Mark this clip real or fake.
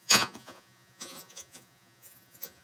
fake